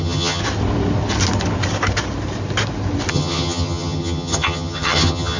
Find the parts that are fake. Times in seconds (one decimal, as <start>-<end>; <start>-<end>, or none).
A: 0.0-0.4; 3.1-5.4